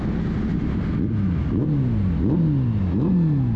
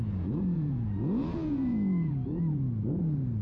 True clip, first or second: first